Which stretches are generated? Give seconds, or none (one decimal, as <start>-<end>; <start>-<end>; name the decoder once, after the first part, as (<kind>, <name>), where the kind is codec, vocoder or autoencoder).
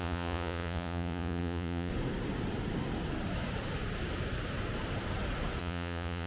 0.0-1.9 (vocoder, Vocos); 5.6-6.3